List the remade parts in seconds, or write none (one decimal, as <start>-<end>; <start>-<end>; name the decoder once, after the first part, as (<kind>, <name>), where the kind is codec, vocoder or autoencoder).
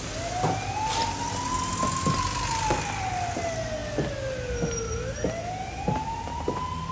none